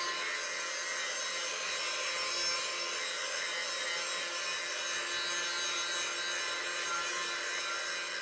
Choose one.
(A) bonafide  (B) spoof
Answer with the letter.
A